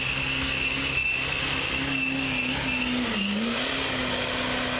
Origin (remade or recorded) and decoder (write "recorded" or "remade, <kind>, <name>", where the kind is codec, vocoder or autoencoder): recorded